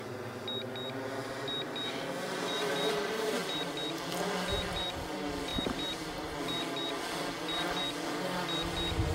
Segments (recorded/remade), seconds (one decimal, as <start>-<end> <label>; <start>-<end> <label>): 0.0-5.5 recorded; 5.5-6.3 remade; 6.3-9.1 recorded